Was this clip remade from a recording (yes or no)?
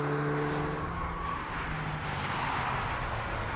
no